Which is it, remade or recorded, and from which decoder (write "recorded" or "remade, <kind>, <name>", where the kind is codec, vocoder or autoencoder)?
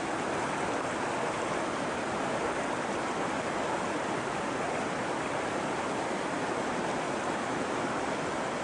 recorded